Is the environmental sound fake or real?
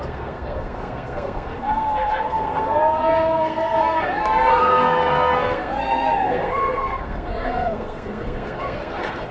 fake